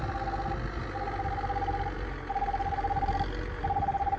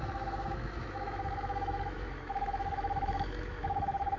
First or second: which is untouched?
first